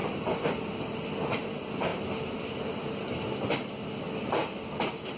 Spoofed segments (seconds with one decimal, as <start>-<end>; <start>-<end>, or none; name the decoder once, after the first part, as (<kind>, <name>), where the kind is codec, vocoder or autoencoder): none